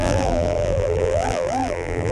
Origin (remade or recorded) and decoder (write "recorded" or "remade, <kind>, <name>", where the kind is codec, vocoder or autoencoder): remade, vocoder, BigVGAN v2